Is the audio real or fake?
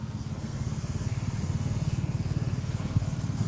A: fake